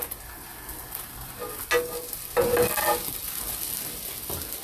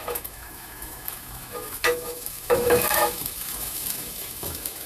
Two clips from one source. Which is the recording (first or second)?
first